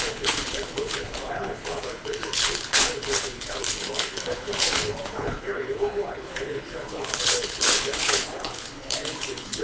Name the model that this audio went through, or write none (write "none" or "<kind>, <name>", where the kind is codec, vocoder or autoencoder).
codec, HILCodec